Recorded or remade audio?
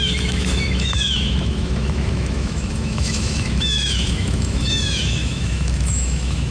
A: remade